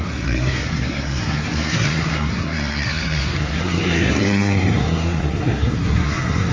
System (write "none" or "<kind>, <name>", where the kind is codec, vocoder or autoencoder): codec, SNAC